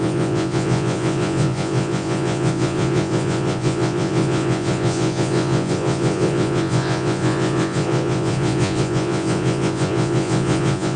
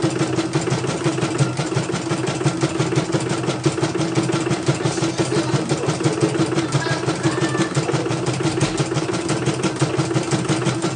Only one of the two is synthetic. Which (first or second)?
first